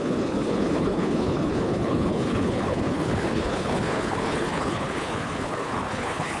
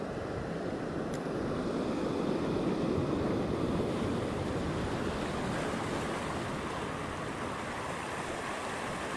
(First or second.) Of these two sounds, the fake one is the first